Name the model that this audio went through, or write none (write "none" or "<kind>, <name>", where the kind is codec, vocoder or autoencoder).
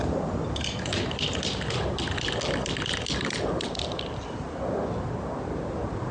none